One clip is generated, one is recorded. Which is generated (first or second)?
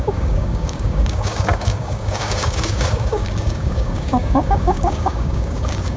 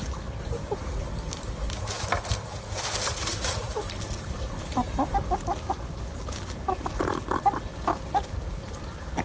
first